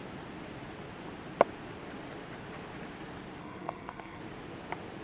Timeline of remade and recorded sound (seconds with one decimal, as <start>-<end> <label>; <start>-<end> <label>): 0.0-3.4 recorded; 3.4-4.2 remade; 4.2-5.0 recorded

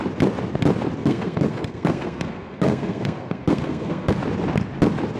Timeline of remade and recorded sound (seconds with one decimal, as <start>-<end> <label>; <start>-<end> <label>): 0.0-1.0 recorded; 1.0-4.1 remade; 4.1-5.2 recorded

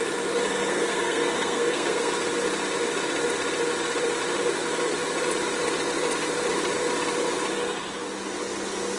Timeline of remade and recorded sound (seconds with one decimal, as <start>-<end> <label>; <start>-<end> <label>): 0.0-0.7 recorded; 0.7-2.1 remade; 2.1-9.0 recorded

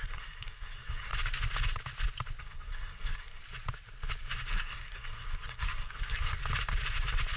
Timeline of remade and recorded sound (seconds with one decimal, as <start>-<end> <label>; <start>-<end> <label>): 0.0-1.1 remade; 1.1-2.4 recorded; 2.4-3.4 remade; 3.4-4.5 recorded; 4.5-6.4 remade; 6.4-7.4 recorded

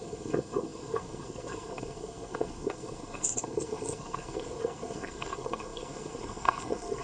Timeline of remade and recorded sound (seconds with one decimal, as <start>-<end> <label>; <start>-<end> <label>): 0.0-7.0 remade

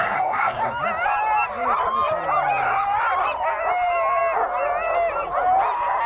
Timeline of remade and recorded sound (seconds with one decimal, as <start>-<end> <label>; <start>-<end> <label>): 0.0-0.6 remade; 0.6-6.1 recorded